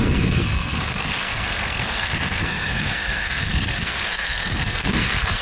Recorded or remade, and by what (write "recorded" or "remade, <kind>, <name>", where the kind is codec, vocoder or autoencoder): remade, codec, SNAC